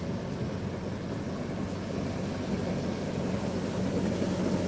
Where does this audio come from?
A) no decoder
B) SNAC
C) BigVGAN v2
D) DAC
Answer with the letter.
A